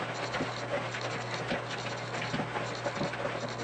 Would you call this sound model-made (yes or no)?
no